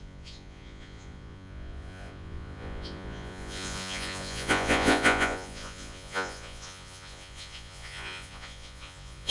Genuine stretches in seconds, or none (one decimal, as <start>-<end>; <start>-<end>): none